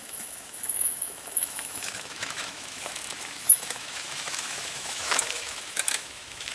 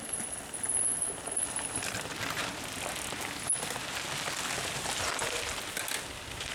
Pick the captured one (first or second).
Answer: second